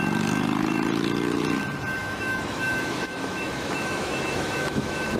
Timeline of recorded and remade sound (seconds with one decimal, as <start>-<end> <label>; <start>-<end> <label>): 0.0-2.0 recorded; 2.0-5.2 remade